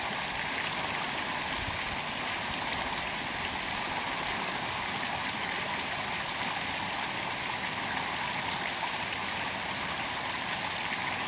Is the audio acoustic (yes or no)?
yes